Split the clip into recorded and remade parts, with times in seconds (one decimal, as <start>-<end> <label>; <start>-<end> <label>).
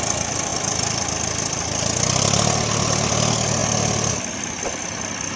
0.0-5.4 recorded